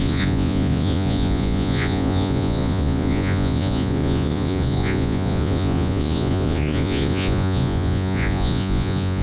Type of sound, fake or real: fake